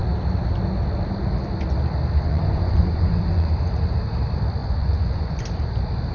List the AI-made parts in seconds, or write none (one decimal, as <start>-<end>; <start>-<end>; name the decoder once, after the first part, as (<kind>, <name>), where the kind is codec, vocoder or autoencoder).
2.3-3.5 (vocoder, Vocos); 4.6-5.4